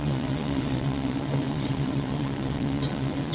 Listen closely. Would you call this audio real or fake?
fake